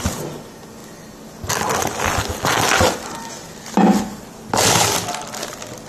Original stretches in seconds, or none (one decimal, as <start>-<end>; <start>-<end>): 0.0-5.9